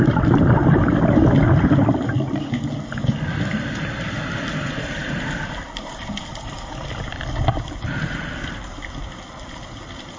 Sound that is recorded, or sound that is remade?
recorded